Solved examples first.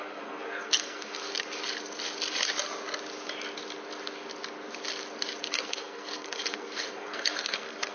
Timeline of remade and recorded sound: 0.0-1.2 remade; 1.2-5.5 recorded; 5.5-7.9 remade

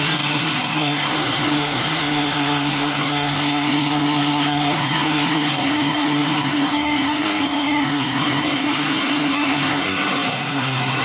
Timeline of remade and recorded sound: 0.0-11.0 remade

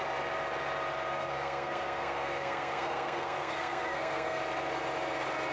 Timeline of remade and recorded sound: 0.0-1.1 recorded; 1.1-4.4 remade; 4.4-5.5 recorded

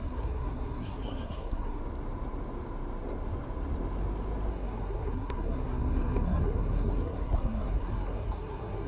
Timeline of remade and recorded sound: 0.0-1.8 remade; 1.8-4.5 recorded; 4.5-8.9 remade

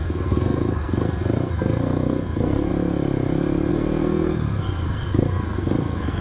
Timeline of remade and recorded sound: 0.0-2.7 remade; 2.7-3.7 recorded; 3.7-6.2 remade

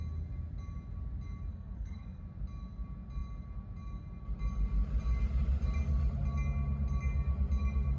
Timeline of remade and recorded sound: 0.0-1.5 recorded; 1.5-2.2 remade; 2.2-8.0 recorded